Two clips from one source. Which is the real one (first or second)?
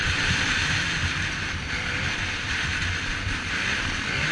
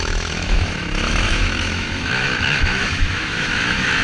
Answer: first